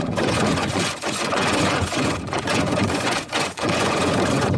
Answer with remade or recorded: remade